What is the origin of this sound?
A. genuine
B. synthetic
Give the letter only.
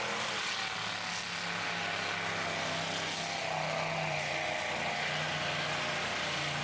A